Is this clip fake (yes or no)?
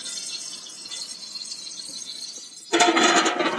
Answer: no